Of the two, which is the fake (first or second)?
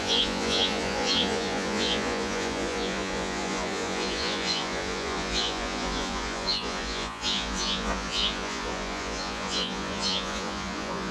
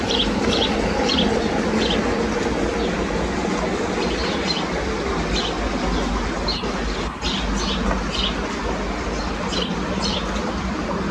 first